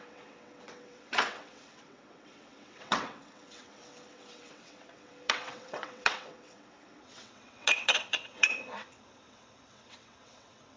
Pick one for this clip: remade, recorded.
remade